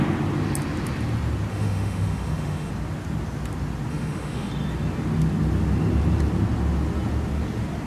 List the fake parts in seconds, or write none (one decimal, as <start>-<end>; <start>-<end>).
1.5-2.7; 3.9-4.5